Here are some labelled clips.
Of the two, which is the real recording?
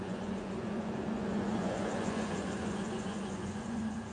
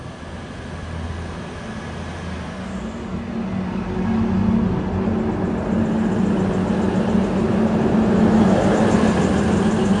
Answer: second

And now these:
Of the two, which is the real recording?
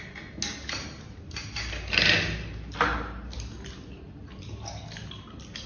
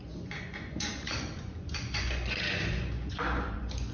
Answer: first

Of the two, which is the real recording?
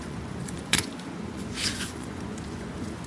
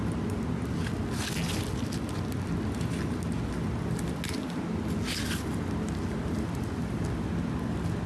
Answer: second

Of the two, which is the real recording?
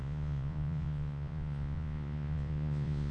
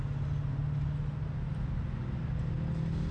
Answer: second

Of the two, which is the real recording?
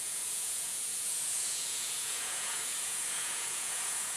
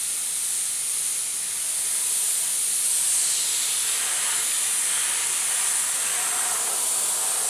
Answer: second